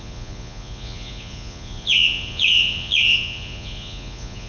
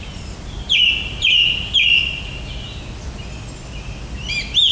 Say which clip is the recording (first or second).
second